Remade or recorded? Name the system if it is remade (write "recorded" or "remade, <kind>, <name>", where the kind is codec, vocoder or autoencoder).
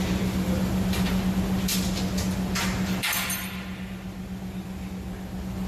recorded